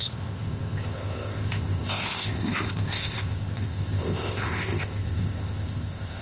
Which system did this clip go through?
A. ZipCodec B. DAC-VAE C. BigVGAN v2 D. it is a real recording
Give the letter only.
A